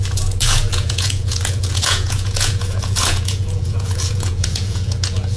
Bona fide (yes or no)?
no